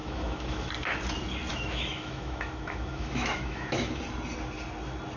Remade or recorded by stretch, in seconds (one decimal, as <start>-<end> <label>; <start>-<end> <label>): 0.0-0.7 remade; 0.7-1.5 recorded; 1.5-4.0 remade; 4.0-5.2 recorded